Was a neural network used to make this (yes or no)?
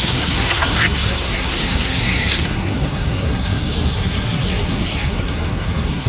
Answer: yes